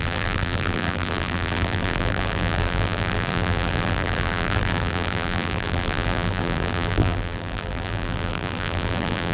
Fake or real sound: fake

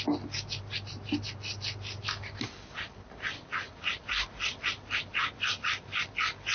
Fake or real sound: real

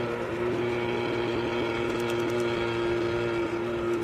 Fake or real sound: real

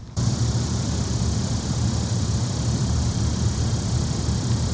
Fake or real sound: fake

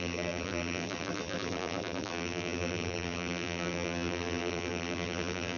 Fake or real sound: fake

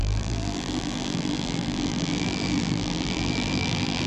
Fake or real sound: fake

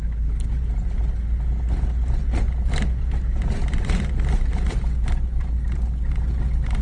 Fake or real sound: real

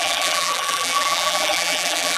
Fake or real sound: fake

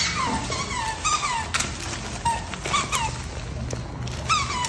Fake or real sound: real